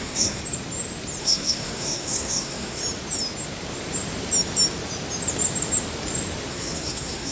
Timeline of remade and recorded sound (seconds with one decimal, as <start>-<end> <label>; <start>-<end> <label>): 0.0-0.4 remade; 0.4-1.2 recorded; 1.2-2.8 remade; 2.8-6.5 recorded; 6.5-7.3 remade